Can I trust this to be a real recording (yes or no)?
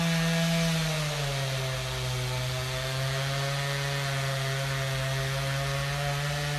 yes